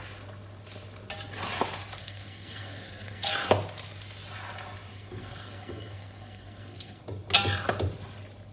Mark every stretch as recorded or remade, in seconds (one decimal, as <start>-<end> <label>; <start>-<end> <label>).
0.0-2.0 recorded; 2.0-3.3 remade; 3.3-4.9 recorded; 4.9-7.0 remade; 7.0-8.5 recorded

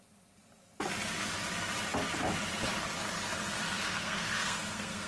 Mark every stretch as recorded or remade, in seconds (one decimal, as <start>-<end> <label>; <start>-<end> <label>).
0.0-3.9 recorded; 3.9-5.1 remade

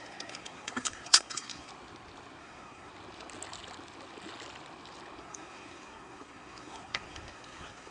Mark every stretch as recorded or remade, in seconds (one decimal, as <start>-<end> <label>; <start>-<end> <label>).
0.0-1.7 remade; 1.7-2.4 recorded; 2.4-2.9 remade; 2.9-5.2 recorded; 5.2-7.9 remade

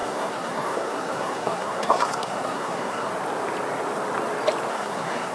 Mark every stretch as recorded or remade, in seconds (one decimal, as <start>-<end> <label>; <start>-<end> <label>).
0.0-3.1 remade; 3.1-4.7 recorded; 4.7-5.3 remade

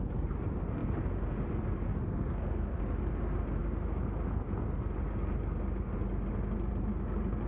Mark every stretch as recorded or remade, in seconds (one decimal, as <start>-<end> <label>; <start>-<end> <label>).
0.0-1.9 recorded; 1.9-2.8 remade; 2.8-7.5 recorded

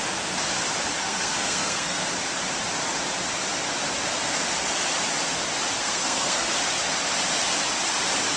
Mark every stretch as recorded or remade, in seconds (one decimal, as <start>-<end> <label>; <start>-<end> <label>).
0.0-1.0 recorded; 1.0-2.0 remade; 2.0-5.8 recorded; 5.8-6.5 remade; 6.5-8.4 recorded